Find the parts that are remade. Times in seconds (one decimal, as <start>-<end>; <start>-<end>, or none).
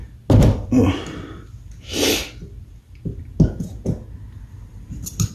none